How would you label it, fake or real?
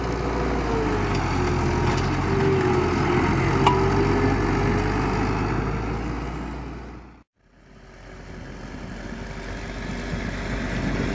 real